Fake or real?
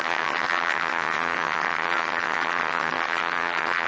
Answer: fake